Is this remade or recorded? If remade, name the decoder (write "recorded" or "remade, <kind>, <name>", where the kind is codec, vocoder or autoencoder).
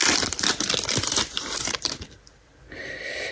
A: remade, vocoder, BigVGAN v2